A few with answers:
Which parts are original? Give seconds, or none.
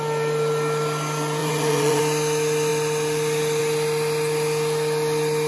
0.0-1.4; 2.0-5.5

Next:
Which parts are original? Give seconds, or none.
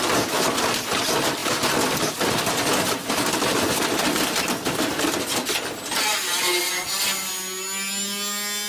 0.0-8.7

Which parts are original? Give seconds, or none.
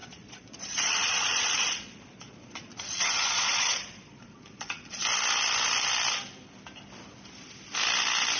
5.0-8.4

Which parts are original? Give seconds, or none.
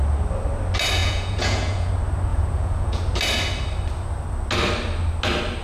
0.0-1.0; 1.9-2.3; 3.0-5.6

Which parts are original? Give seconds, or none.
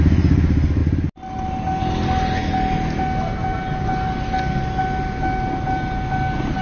0.0-6.6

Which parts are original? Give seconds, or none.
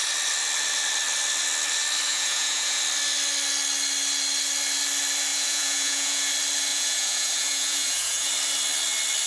0.0-2.1; 2.8-5.3; 6.3-6.7; 8.3-9.3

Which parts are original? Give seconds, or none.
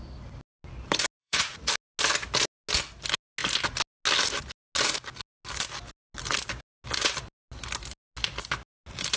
0.0-1.2; 1.7-9.2